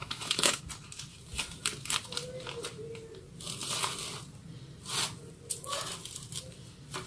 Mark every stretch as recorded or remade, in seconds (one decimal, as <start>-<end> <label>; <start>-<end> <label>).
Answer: 0.0-0.6 remade; 0.6-7.1 recorded